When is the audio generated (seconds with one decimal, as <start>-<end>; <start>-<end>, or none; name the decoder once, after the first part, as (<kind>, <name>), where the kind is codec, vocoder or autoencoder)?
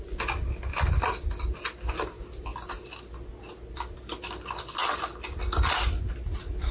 none